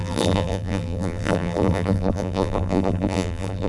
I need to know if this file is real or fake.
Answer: fake